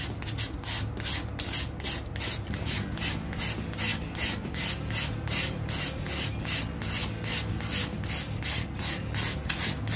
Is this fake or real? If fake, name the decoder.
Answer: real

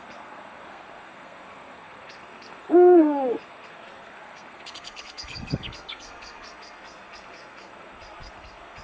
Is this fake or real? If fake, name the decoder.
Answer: fake, codec, SNAC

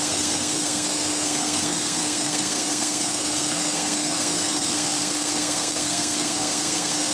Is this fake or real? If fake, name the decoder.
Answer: fake, codec, SNAC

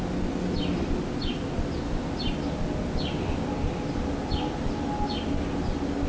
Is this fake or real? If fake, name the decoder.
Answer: real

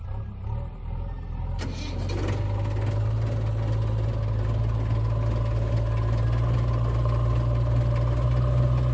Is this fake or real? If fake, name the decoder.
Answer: real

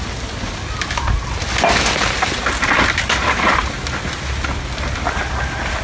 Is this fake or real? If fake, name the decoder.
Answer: real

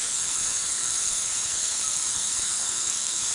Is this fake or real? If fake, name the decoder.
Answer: fake, codec, SNAC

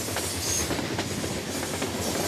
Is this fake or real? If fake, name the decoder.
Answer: real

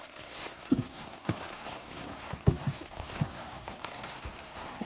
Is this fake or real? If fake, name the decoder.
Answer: fake, codec, SNAC